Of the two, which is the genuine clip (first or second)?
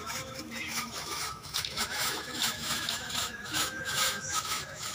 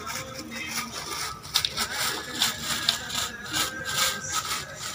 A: second